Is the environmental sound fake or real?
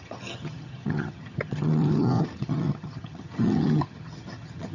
fake